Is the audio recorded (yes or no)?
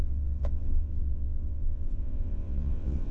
no